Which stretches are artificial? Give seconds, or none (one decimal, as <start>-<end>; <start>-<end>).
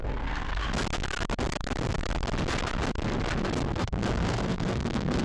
0.0-0.6; 3.7-5.2